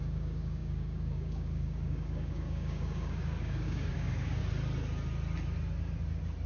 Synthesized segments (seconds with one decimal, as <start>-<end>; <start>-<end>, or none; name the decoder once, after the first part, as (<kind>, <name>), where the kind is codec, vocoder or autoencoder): 0.0-4.4 (codec, DAC)